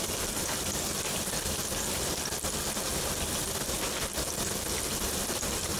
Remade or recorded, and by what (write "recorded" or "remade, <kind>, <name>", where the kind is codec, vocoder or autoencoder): recorded